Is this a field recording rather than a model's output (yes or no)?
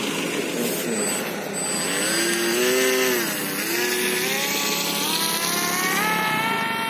yes